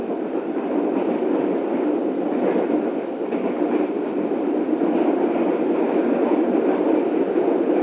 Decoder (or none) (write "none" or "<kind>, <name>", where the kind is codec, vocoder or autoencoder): none